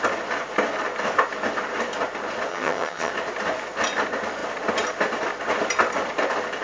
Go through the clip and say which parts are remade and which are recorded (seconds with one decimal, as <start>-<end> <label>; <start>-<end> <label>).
0.0-2.5 recorded; 2.5-3.1 remade; 3.1-6.6 recorded